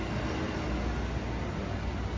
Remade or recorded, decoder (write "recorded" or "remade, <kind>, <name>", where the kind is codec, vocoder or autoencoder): recorded